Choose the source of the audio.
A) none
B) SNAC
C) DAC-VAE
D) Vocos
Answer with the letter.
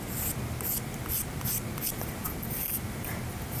A